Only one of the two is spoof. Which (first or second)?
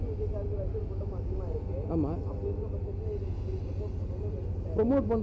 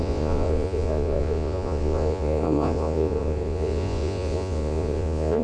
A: second